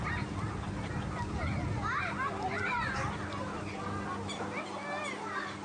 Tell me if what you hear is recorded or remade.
recorded